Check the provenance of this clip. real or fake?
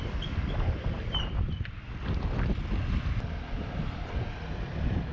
real